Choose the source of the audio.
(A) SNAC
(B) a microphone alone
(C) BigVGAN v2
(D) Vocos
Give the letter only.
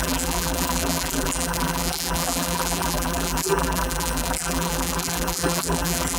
C